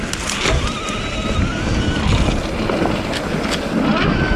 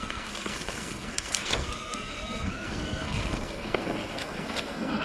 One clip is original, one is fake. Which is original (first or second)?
first